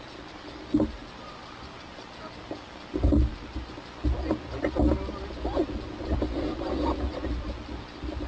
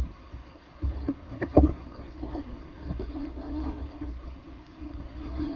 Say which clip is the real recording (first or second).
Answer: first